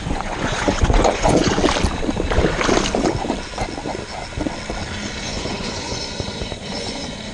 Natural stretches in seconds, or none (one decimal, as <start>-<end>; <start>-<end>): 1.6-5.2